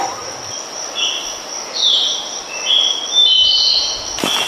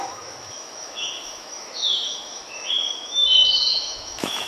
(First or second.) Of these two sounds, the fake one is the second